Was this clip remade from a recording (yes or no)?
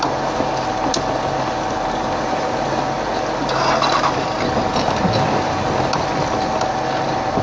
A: no